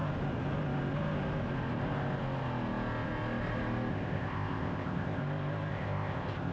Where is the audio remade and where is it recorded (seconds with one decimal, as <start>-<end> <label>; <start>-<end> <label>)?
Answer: 0.0-3.9 recorded; 3.9-5.2 remade; 5.2-5.7 recorded; 5.7-6.5 remade